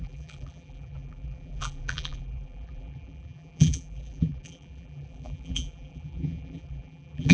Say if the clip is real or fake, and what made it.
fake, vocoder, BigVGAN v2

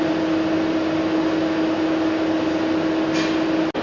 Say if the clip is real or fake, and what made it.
real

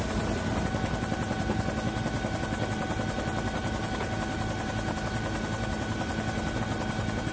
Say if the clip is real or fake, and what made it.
real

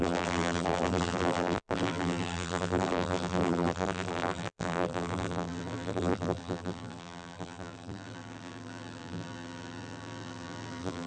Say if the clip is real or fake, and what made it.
fake, vocoder, BigVGAN v2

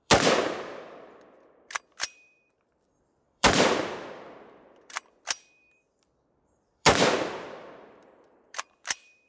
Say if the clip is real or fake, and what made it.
fake, vocoder, BigVGAN v2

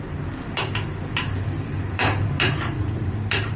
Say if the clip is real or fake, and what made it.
fake, vocoder, BigVGAN v2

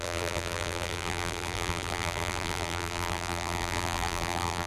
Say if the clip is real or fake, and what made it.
fake, vocoder, BigVGAN v2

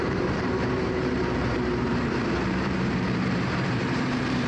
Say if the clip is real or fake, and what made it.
fake, vocoder, BigVGAN v2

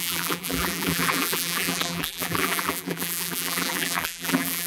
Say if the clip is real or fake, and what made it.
fake, vocoder, BigVGAN v2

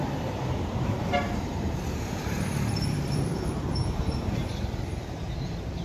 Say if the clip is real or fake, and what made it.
fake, vocoder, BigVGAN v2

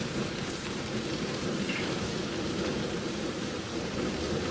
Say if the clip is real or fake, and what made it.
fake, vocoder, BigVGAN v2